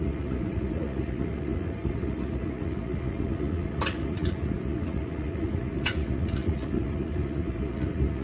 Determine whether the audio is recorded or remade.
remade